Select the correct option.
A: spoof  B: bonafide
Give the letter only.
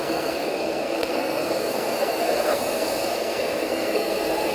A